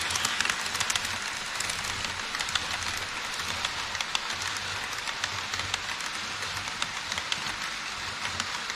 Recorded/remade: recorded